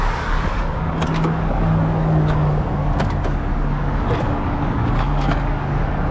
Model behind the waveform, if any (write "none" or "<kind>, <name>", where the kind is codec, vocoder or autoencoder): codec, DAC